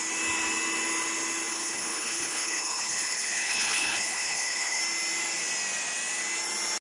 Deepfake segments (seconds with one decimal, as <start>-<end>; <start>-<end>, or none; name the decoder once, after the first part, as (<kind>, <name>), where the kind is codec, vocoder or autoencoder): 1.5-4.8 (codec, HILCodec)